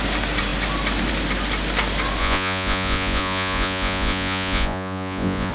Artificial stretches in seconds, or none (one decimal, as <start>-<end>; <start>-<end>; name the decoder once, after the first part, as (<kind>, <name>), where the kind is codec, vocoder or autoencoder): 2.2-5.5 (vocoder, Vocos)